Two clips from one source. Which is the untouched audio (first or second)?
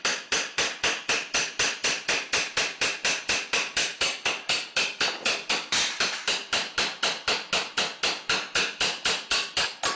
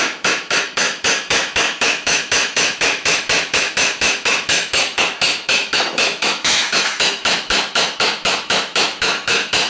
first